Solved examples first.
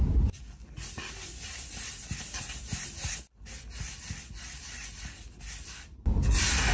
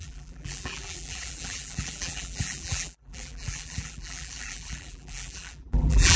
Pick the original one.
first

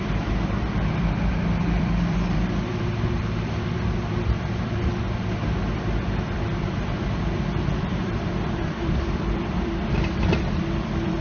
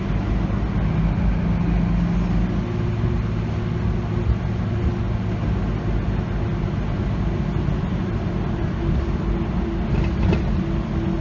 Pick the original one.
second